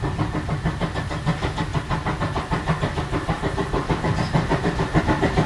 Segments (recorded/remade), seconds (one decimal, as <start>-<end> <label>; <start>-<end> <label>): 0.0-5.5 recorded